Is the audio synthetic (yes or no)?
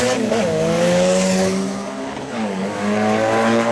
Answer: yes